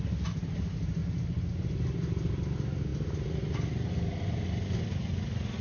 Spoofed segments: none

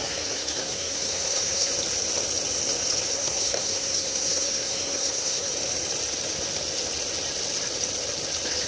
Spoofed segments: 0.0-1.7 (codec, SNAC); 3.1-5.5

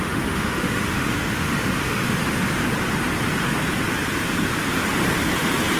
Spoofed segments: 0.0-2.2 (autoencoder, DAC-VAE)

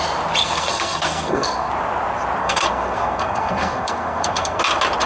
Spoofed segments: 0.4-1.7 (codec, SNAC); 2.4-4.6

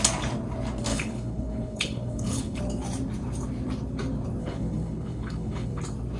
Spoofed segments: 0.9-2.6 (codec, HILCodec); 4.4-5.8

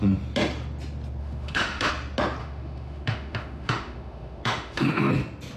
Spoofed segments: 1.2-1.9 (autoencoder, DAC-VAE); 2.4-5.1